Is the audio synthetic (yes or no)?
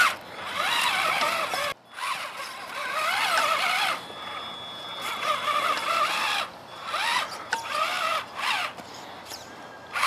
no